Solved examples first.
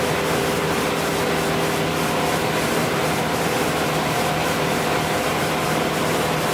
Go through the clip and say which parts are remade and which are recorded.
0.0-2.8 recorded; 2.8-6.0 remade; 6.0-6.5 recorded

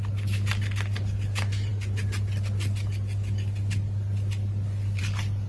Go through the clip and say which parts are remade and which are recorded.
0.0-5.5 recorded

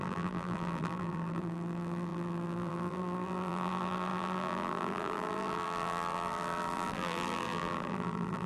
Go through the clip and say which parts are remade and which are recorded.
0.0-8.5 remade

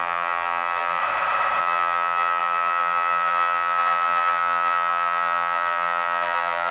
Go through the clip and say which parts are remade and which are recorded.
0.0-1.0 remade; 1.0-1.6 recorded; 1.6-6.7 remade

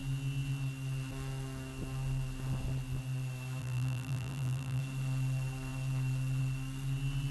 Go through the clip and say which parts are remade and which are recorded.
0.0-3.6 recorded; 3.6-4.8 remade; 4.8-7.3 recorded